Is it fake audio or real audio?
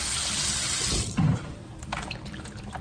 real